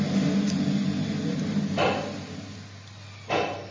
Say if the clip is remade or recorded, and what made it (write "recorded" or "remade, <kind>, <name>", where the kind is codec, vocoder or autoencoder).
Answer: recorded